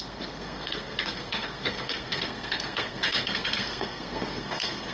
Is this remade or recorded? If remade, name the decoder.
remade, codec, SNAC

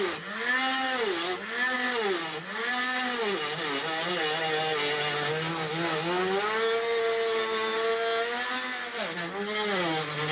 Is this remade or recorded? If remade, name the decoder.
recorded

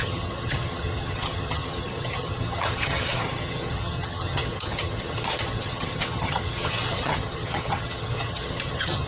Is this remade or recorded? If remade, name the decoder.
remade, vocoder, HiFi-GAN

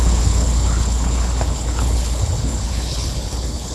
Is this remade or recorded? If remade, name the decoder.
remade, codec, HILCodec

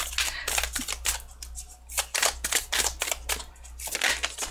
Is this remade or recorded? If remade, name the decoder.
recorded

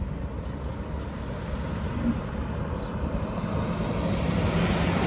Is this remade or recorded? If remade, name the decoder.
recorded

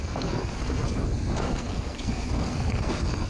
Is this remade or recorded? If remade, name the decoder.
remade, codec, SNAC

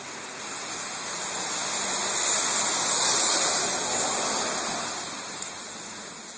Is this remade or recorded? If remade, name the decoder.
recorded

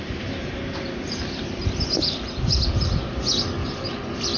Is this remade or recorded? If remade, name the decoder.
recorded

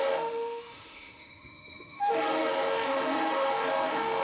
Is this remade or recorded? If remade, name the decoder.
remade, autoencoder, DAC-VAE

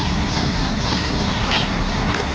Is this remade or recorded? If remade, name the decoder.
remade, codec, SNAC